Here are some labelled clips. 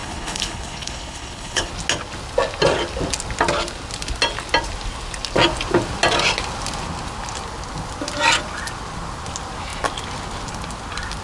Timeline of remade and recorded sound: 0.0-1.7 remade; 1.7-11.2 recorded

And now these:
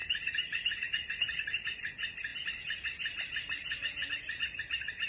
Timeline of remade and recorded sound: 0.0-5.1 recorded

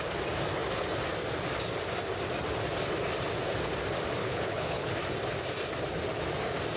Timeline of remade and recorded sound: 0.0-4.2 recorded; 4.2-4.9 remade; 4.9-6.8 recorded

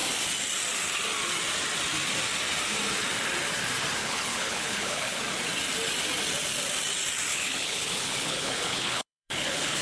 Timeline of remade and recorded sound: 0.0-4.0 recorded; 4.0-5.2 remade; 5.2-7.3 recorded; 7.3-9.8 remade